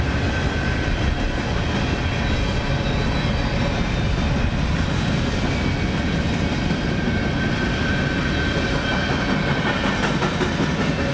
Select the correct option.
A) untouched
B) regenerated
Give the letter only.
A